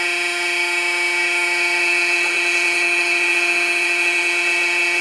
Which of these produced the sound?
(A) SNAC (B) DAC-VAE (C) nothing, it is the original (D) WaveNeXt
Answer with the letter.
B